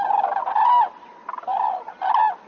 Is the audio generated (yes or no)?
no